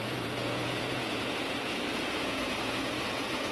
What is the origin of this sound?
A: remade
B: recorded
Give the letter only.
A